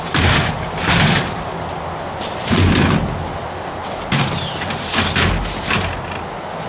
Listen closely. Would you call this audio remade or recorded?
recorded